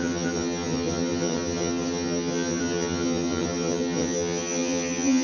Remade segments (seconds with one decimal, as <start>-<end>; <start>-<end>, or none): 0.0-5.2